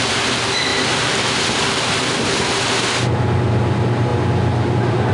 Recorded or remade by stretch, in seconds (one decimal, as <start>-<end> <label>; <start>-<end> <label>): 0.0-5.1 recorded